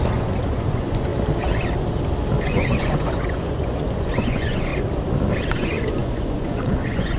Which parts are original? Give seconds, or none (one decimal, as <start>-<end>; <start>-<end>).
1.1-2.4; 4.7-5.5